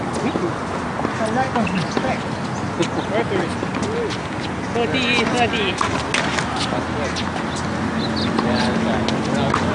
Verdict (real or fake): real